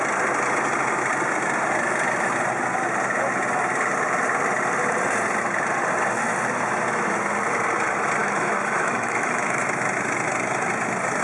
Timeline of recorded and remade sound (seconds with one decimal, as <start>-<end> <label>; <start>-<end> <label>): 0.0-8.2 recorded; 8.2-9.6 remade; 9.6-11.2 recorded